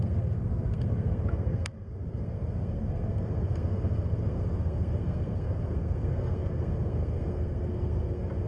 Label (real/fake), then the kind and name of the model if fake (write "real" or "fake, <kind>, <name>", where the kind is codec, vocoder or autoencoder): fake, codec, SNAC